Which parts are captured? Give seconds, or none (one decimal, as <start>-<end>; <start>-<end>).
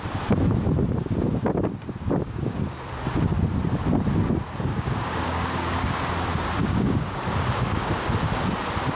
0.0-4.7; 6.0-6.6; 7.9-8.9